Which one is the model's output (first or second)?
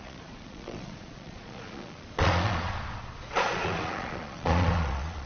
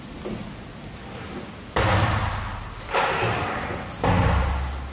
first